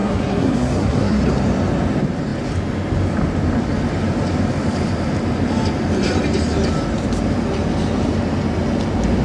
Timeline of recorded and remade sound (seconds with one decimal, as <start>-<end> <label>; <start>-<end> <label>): 0.0-1.2 remade; 1.2-9.2 recorded